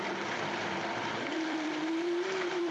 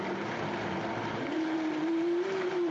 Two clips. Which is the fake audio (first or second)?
first